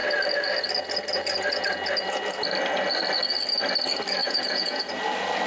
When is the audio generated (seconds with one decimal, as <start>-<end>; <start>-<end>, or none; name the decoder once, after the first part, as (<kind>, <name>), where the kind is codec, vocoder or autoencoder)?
4.2-4.9 (vocoder, Vocos)